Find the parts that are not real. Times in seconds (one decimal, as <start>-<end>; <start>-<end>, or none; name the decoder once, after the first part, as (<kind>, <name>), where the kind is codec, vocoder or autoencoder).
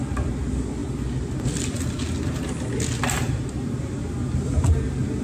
none